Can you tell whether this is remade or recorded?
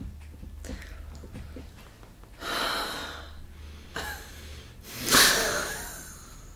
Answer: recorded